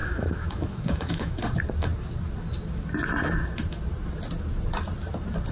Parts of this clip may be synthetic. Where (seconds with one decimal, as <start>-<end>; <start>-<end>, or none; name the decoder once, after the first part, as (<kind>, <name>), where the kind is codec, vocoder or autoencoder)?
0.0-1.4 (autoencoder, DAC-VAE)